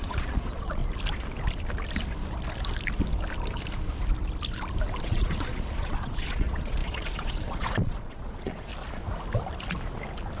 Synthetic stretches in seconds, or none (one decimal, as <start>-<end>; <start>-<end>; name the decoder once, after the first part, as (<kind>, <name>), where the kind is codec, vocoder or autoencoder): 0.0-0.8 (vocoder, Vocos); 5.0-8.7